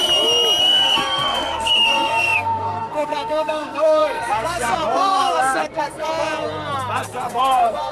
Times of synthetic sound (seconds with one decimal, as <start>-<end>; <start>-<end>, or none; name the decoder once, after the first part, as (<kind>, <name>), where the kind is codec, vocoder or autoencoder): 0.6-6.1 (codec, SNAC); 7.3-7.9